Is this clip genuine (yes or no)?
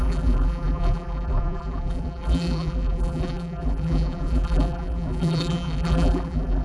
no